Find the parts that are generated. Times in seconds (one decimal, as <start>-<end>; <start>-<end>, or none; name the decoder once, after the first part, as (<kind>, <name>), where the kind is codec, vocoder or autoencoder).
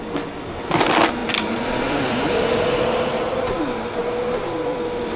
1.2-3.6 (vocoder, BigVGAN v2); 4.0-5.2